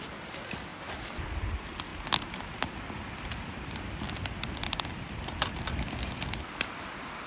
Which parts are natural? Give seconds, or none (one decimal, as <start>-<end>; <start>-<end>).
0.0-7.3